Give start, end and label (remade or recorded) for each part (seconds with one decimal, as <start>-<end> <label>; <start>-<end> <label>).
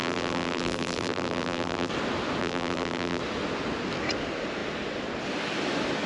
0.0-1.9 remade; 1.9-2.4 recorded; 2.4-3.2 remade; 3.2-6.1 recorded